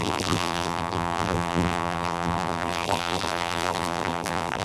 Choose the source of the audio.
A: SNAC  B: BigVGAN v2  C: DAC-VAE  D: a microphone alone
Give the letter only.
B